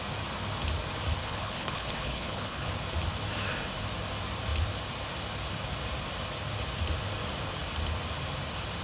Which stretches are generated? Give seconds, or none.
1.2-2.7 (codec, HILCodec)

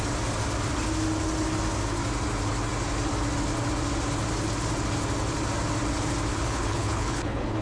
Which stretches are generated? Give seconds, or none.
6.3-7.6 (codec, HILCodec)

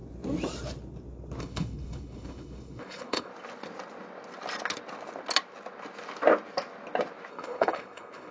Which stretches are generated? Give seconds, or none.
1.4-3.3 (codec, HILCodec); 7.3-8.3

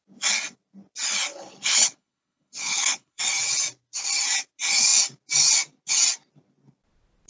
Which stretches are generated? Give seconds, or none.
1.3-3.2 (codec, HILCodec)

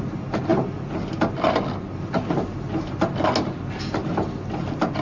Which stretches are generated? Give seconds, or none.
none

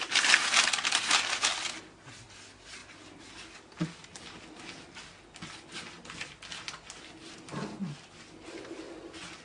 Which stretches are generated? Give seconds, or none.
none